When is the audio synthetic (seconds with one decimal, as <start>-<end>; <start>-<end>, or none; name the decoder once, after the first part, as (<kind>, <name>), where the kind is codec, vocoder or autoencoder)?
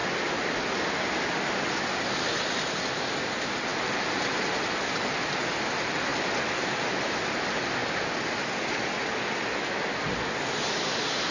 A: none